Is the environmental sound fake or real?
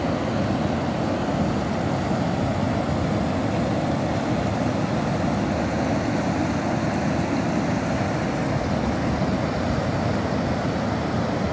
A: real